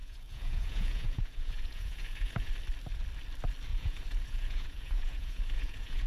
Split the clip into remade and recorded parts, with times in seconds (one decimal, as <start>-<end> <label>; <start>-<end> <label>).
0.0-2.5 remade; 2.5-3.7 recorded; 3.7-6.1 remade